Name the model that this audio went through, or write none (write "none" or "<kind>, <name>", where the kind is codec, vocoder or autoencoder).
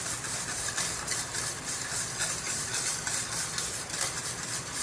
vocoder, BigVGAN v2